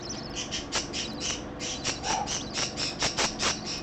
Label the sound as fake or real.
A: real